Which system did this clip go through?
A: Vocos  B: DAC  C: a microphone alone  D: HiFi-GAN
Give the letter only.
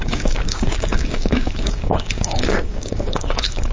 B